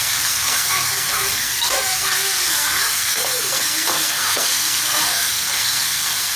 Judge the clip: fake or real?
fake